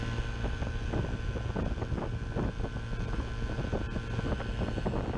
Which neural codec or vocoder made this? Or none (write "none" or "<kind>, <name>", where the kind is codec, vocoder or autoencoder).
none